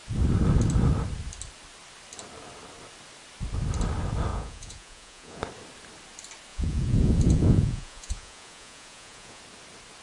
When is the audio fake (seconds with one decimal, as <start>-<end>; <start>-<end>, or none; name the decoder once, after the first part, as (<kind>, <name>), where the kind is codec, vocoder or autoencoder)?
4.3-5.4 (vocoder, Vocos); 6.5-9.4